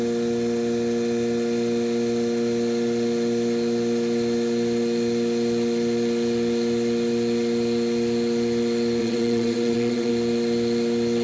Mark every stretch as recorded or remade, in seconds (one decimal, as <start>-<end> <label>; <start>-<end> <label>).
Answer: 0.0-9.0 recorded; 9.0-10.1 remade; 10.1-11.2 recorded